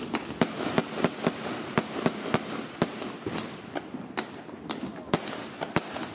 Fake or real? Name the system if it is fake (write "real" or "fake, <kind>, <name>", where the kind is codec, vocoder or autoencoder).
real